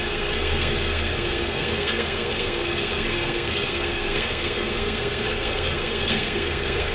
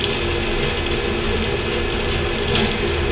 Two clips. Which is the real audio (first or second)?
second